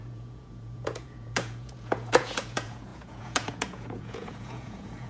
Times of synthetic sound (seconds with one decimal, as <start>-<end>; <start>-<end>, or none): 0.0-5.1